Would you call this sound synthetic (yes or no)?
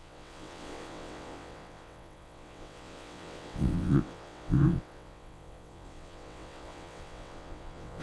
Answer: yes